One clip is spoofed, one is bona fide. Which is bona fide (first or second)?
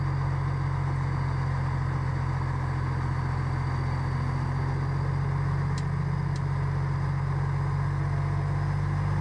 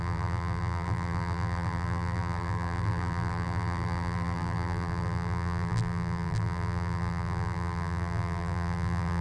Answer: first